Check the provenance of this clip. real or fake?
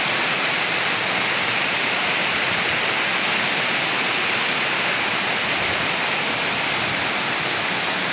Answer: fake